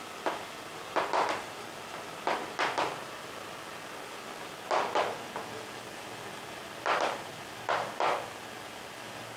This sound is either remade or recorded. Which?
recorded